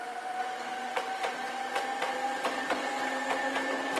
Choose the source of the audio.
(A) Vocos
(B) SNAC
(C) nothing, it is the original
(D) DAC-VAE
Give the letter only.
C